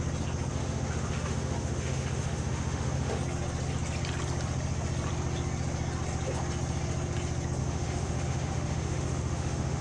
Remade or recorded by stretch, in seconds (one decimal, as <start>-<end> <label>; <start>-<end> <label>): 0.0-0.5 recorded; 0.5-3.2 remade; 3.2-7.6 recorded; 7.6-9.8 remade